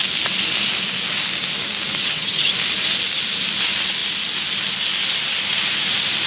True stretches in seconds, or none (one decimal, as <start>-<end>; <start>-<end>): 0.0-2.0; 2.5-6.3